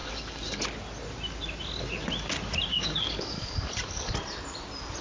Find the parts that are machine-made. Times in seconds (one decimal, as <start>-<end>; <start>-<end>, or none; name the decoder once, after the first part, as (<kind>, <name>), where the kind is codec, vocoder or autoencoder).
0.0-0.6 (codec, DAC); 2.7-4.1